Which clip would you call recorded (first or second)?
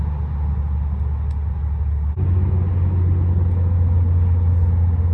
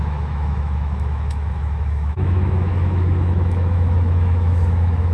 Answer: first